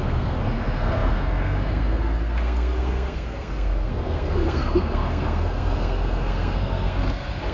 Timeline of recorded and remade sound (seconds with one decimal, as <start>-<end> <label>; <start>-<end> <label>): 0.0-7.5 remade